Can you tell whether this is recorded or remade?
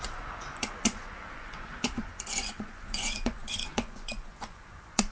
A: remade